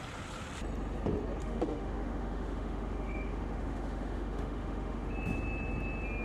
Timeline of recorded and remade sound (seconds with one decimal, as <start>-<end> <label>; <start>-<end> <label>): 0.0-1.4 recorded; 1.4-5.1 remade; 5.1-6.2 recorded